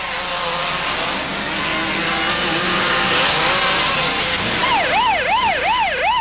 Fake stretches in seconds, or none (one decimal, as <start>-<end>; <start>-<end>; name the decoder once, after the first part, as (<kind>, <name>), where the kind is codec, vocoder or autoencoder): 2.5-3.4 (codec, DAC)